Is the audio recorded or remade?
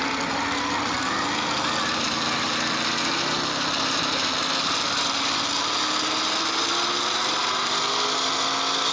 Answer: recorded